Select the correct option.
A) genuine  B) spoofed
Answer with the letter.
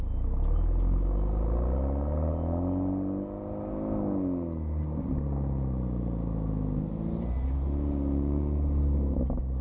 A